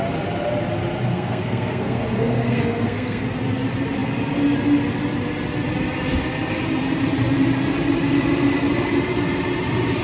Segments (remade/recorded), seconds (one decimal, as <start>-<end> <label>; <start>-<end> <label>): 0.0-1.1 recorded; 1.1-3.2 remade; 3.2-10.0 recorded